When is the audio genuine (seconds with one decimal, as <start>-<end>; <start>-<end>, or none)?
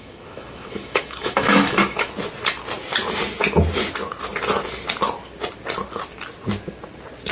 2.1-7.3